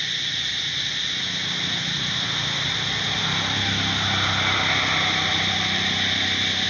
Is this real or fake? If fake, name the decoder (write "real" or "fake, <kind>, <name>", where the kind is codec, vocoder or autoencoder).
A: real